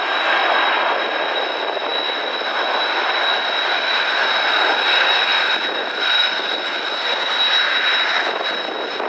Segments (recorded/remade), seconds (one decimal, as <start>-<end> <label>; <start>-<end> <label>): 0.0-9.1 recorded

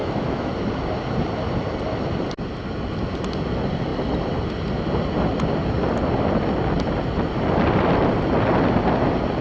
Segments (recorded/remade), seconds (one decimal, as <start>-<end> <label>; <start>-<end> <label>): 0.0-0.5 remade; 0.5-9.4 recorded

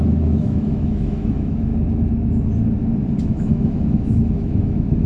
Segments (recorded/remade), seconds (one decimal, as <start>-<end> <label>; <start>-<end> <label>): 0.0-1.7 remade; 1.7-3.2 recorded; 3.2-5.1 remade

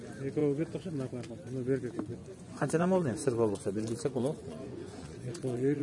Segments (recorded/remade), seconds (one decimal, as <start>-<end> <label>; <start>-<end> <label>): 0.0-2.1 recorded; 2.1-5.8 remade